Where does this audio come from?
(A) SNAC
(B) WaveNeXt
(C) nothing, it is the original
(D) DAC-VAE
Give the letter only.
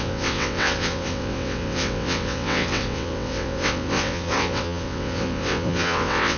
B